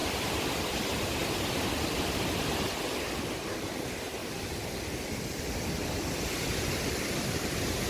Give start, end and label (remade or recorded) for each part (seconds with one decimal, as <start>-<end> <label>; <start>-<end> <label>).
0.0-0.5 remade; 0.5-1.2 recorded; 1.2-1.7 remade; 1.7-4.2 recorded; 4.2-7.9 remade